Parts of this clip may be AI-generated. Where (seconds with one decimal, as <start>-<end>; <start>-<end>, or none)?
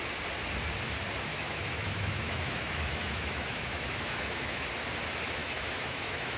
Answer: 1.3-4.7; 5.4-6.4